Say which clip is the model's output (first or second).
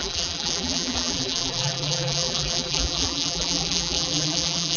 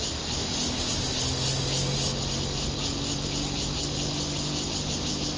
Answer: first